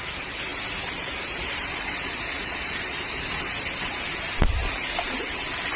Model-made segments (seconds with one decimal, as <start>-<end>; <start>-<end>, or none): none